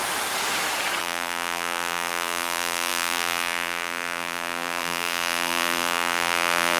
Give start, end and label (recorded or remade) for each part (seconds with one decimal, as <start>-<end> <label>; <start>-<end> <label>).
0.0-1.0 recorded; 1.0-6.8 remade